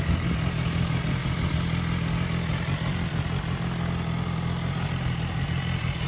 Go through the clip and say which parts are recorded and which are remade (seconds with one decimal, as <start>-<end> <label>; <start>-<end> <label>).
0.0-6.1 recorded